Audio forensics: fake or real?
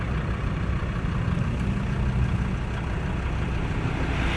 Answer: real